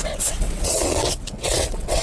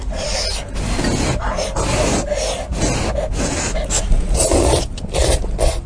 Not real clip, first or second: first